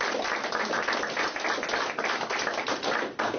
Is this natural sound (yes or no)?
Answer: yes